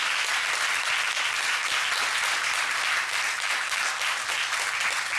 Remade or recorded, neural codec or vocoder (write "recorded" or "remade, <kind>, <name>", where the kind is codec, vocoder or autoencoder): recorded